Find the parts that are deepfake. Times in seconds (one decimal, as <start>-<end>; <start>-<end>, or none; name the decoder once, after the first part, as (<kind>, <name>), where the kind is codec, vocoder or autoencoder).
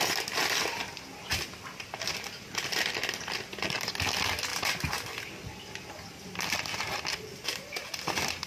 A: none